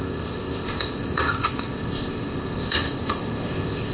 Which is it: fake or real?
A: fake